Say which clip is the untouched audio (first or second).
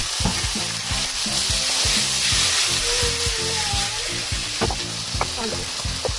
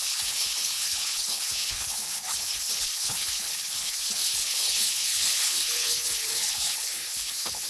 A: first